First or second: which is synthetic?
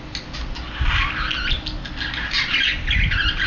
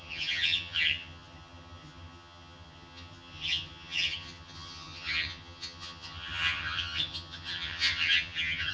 second